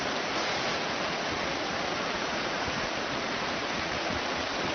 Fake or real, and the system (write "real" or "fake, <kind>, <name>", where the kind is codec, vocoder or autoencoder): fake, vocoder, Vocos